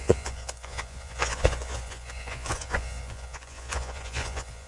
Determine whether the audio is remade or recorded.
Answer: remade